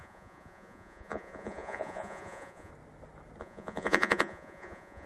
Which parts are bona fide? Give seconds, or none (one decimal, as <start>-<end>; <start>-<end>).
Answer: 2.7-3.4